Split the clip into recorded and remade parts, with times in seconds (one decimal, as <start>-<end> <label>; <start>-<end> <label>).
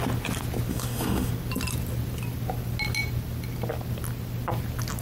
0.0-0.7 recorded; 0.7-1.3 remade; 1.3-5.0 recorded